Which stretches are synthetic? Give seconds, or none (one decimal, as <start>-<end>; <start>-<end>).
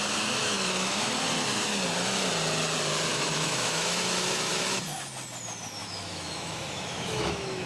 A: 0.4-1.1; 3.1-4.8; 5.8-7.7